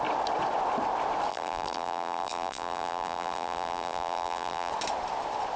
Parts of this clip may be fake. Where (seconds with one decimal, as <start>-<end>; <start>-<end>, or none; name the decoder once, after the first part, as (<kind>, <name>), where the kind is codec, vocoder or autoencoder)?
1.3-4.7 (vocoder, BigVGAN v2)